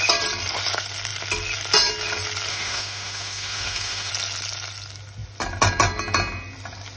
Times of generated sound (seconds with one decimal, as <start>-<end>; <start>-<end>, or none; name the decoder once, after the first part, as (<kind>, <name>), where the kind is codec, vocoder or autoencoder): 2.5-4.1 (autoencoder, DAC-VAE)